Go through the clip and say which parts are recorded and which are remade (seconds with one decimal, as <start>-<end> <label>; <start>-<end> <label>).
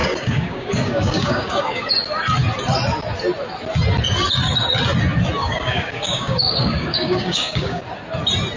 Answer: 0.0-1.9 remade; 1.9-5.4 recorded; 5.4-7.8 remade; 7.8-8.6 recorded